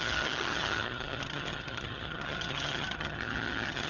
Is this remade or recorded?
remade